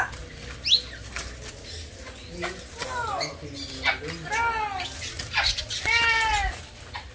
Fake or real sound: real